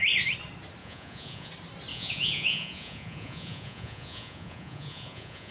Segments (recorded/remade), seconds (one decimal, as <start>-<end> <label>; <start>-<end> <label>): 0.0-0.8 recorded; 0.8-1.5 remade; 1.5-1.9 recorded; 1.9-5.5 remade